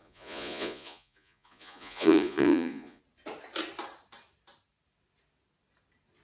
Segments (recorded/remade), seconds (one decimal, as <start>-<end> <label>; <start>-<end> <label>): 0.0-3.0 remade; 3.0-6.2 recorded

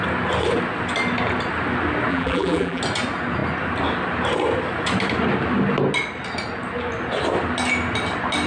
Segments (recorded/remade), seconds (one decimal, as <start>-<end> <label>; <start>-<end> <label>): 0.0-2.1 recorded; 2.1-2.8 remade; 2.8-8.5 recorded

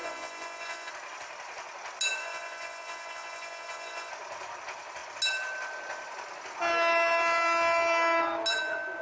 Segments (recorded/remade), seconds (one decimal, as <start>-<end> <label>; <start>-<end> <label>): 0.0-0.9 remade; 0.9-2.2 recorded; 2.2-4.1 remade; 4.1-9.0 recorded

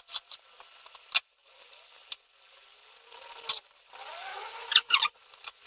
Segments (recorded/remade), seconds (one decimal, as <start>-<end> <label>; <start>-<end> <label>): 0.0-4.3 recorded; 4.3-5.2 remade; 5.2-5.7 recorded